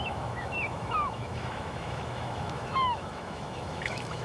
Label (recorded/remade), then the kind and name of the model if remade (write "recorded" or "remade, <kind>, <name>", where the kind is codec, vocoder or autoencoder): remade, autoencoder, DAC-VAE